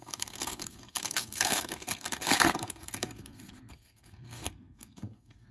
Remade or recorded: remade